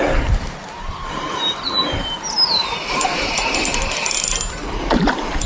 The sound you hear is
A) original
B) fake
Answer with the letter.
A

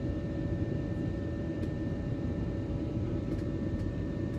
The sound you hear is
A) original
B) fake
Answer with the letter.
B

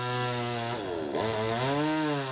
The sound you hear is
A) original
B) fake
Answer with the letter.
A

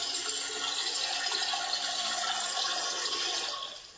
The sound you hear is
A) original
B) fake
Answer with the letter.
B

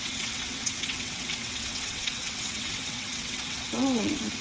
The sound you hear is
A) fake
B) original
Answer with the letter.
A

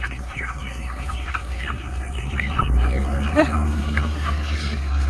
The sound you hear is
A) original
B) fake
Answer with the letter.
B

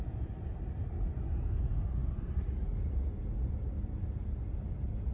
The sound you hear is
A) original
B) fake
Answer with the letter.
A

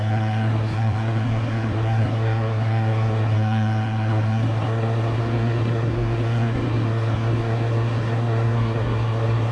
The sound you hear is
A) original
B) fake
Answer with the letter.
B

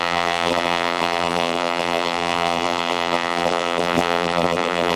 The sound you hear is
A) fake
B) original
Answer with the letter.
A